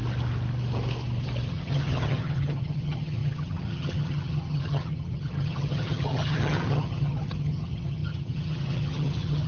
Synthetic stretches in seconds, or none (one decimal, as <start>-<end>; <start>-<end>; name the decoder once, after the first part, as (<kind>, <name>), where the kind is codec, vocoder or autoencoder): 1.5-9.5 (vocoder, HiFi-GAN)